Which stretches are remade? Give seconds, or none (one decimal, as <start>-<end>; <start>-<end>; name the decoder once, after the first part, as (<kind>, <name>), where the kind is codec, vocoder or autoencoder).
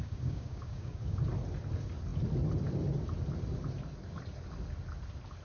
0.0-1.2 (codec, DAC)